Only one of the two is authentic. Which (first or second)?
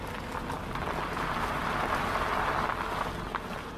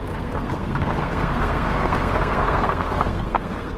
first